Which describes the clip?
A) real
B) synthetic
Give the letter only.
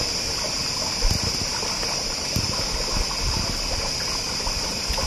A